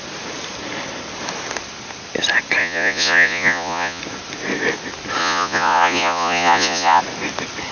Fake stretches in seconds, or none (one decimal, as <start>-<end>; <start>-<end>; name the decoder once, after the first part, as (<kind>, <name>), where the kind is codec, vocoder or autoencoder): 2.6-4.0 (vocoder, Vocos); 5.2-7.0